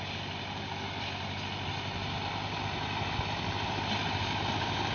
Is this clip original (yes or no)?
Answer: yes